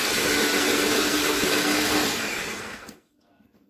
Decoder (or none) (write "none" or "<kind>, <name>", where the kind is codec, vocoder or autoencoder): codec, SNAC